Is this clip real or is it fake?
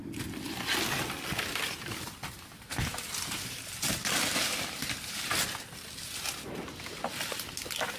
real